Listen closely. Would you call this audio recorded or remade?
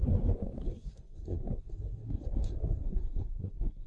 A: remade